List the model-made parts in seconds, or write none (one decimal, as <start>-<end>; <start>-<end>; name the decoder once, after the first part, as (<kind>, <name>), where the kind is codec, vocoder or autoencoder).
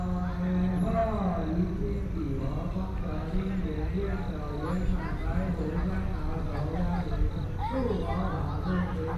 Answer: none